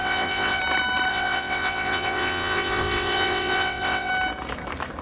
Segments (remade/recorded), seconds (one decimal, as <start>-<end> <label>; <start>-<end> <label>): 0.0-0.6 remade; 0.6-1.1 recorded; 1.1-4.1 remade; 4.1-5.0 recorded